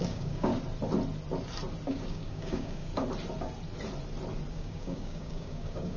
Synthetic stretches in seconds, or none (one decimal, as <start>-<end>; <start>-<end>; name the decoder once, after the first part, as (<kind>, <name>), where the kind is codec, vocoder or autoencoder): 0.0-0.5 (codec, DAC); 1.9-2.9; 4.5-6.0